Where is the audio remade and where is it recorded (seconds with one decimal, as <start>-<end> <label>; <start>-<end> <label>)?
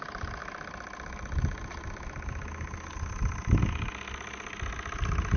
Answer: 0.0-5.4 recorded